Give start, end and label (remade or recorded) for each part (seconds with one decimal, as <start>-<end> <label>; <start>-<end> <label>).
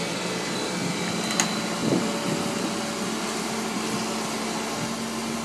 0.0-5.4 recorded